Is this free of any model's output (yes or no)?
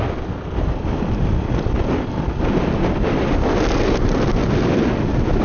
yes